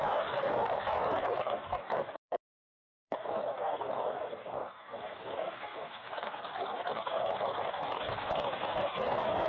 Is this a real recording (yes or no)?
no